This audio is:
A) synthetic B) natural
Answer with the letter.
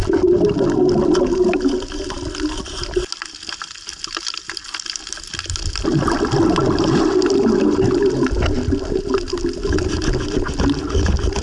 B